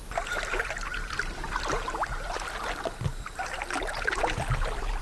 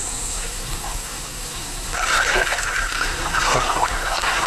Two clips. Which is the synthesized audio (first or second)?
second